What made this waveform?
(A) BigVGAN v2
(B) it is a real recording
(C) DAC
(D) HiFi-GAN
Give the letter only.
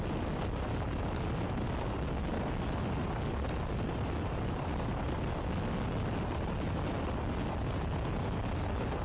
B